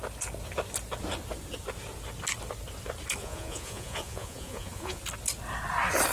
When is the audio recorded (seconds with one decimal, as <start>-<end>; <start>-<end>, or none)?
0.0-3.2; 5.0-6.1